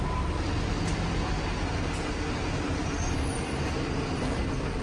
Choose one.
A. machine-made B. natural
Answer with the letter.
B